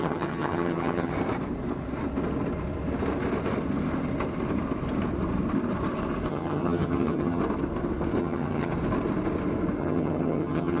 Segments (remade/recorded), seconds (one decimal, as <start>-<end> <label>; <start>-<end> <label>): 0.0-1.1 remade; 1.1-6.3 recorded; 6.3-7.4 remade; 7.4-8.2 recorded; 8.2-8.7 remade; 8.7-9.8 recorded; 9.8-10.8 remade